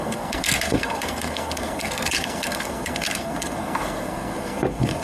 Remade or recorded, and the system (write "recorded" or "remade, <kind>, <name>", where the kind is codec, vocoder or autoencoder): remade, codec, SNAC